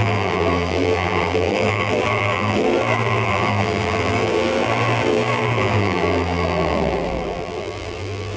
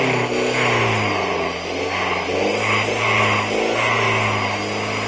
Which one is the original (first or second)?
second